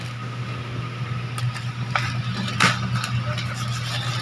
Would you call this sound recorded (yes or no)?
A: yes